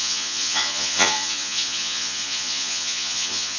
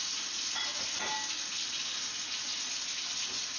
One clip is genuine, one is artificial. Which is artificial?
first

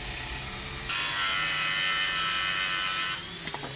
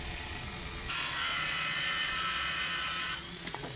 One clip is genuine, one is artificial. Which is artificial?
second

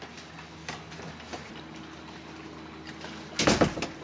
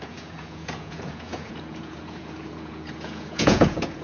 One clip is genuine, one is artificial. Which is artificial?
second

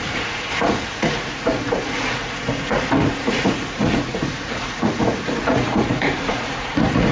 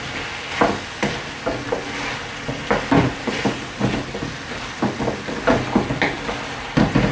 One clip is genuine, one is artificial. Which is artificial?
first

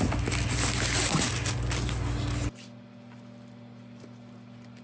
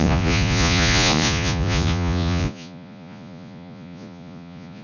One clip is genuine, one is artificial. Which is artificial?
second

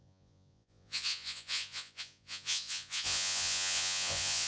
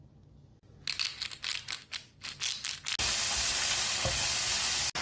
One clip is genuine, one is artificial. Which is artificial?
first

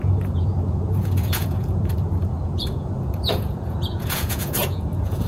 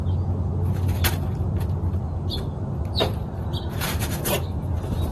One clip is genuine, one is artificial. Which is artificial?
first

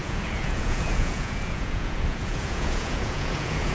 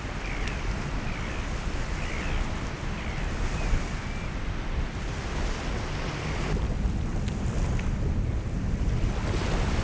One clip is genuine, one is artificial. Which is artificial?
first